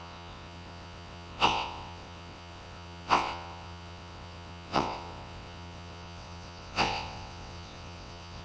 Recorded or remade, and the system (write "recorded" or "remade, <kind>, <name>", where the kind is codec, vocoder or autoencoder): remade, vocoder, WaveNeXt